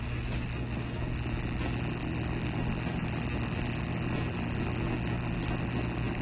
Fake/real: real